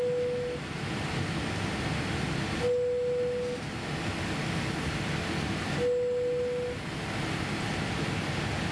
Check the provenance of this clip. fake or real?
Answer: real